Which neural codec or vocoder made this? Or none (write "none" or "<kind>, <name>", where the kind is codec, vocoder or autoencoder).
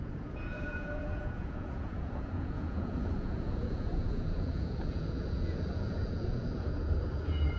vocoder, Vocos